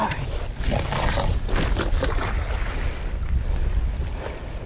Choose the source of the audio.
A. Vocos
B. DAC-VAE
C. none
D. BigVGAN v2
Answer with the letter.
C